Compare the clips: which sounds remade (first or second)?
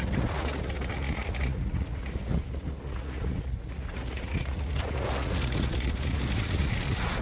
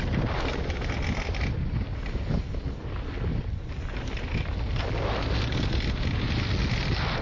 first